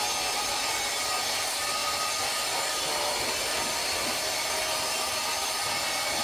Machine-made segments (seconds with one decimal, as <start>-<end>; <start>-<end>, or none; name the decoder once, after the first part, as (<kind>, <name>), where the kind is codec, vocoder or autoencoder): 0.5-1.1 (vocoder, BigVGAN v2); 1.8-5.5